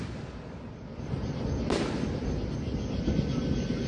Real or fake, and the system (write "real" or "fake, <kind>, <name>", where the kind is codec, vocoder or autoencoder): real